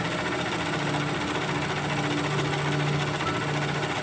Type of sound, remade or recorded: recorded